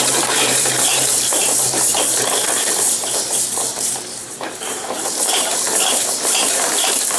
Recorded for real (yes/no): no